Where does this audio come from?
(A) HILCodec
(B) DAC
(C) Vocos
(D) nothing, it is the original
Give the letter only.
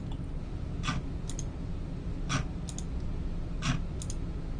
D